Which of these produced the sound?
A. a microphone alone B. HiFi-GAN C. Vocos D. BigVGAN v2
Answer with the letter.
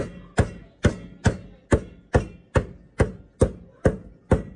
A